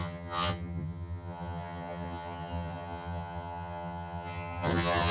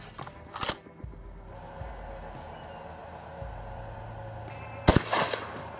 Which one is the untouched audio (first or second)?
second